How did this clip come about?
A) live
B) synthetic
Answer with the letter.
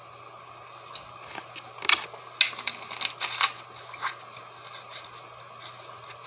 A